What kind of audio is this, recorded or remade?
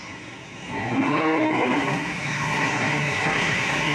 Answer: remade